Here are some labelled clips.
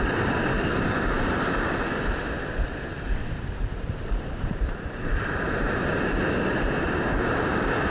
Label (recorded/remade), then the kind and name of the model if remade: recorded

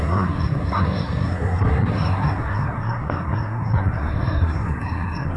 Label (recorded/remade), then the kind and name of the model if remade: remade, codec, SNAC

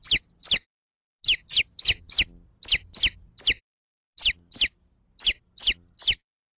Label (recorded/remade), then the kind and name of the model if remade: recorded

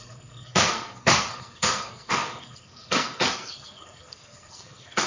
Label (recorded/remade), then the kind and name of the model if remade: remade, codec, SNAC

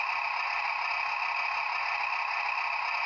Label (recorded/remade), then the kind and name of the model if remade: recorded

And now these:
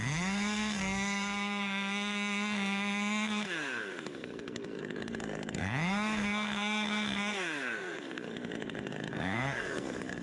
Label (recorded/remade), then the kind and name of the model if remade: remade, codec, SNAC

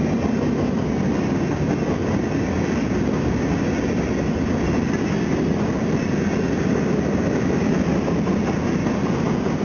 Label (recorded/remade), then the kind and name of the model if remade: recorded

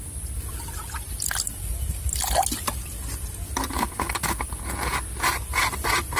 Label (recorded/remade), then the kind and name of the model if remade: recorded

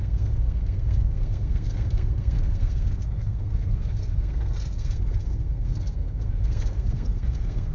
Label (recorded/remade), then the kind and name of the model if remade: remade, codec, SNAC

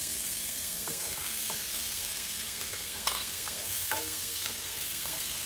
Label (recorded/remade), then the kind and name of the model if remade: remade, codec, SNAC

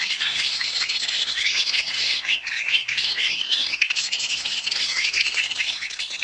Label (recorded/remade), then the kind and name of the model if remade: remade, codec, SNAC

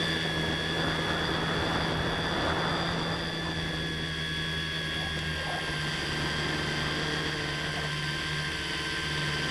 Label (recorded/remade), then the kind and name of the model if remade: recorded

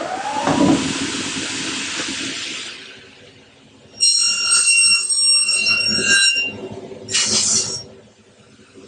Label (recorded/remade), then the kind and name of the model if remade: recorded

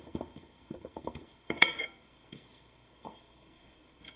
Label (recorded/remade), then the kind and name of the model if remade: remade, codec, SNAC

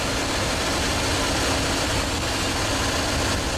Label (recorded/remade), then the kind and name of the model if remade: recorded